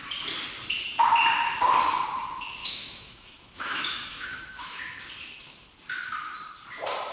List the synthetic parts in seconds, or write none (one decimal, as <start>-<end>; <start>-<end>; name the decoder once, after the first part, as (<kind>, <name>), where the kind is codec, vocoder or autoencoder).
2.6-5.0 (autoencoder, DAC-VAE)